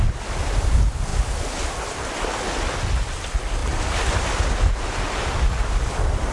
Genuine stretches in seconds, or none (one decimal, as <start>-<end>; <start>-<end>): 0.0-6.3